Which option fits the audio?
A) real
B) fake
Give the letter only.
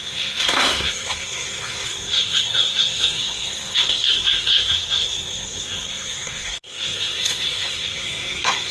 B